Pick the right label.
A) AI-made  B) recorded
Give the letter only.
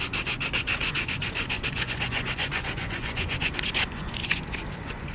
A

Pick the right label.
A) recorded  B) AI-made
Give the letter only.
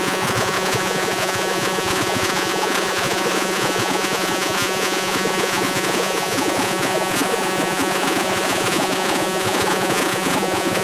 B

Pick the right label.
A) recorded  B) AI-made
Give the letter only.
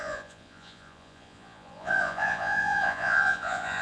B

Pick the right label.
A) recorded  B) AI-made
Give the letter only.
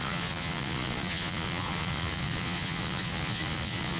B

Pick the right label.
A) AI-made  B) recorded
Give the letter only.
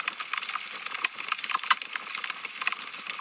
B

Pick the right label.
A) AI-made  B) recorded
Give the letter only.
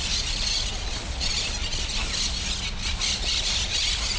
B